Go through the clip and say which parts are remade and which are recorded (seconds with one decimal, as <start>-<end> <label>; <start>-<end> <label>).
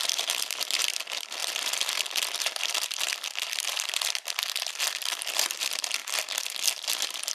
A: 0.0-6.0 remade; 6.0-7.3 recorded